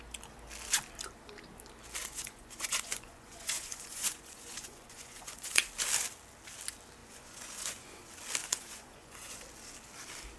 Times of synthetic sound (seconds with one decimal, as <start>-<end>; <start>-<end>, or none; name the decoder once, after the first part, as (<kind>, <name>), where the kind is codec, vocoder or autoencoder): 2.0-5.7 (vocoder, Vocos); 7.0-8.0; 8.4-9.4